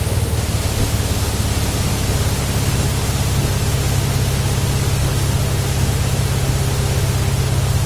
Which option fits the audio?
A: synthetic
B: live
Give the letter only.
B